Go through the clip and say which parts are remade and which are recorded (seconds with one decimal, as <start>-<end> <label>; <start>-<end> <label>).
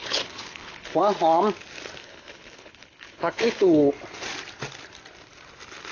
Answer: 0.0-1.0 remade; 1.0-2.0 recorded; 2.0-3.9 remade; 3.9-5.9 recorded